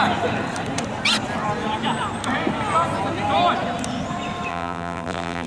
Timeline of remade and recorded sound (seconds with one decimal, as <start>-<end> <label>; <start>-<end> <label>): 0.0-4.5 recorded; 4.5-5.5 remade

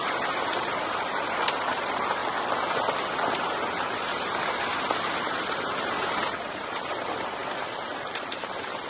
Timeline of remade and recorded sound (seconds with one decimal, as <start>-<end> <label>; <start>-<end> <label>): 0.0-2.2 remade; 2.2-3.9 recorded; 3.9-8.9 remade

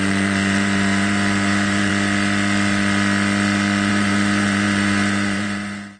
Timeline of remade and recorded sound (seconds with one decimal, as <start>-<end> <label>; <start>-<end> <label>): 0.0-1.9 remade; 1.9-3.9 recorded; 3.9-6.0 remade

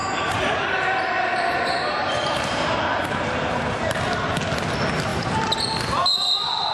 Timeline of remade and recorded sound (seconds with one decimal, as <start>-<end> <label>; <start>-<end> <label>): 0.0-4.0 remade; 4.0-5.1 recorded; 5.1-5.6 remade; 5.6-6.7 recorded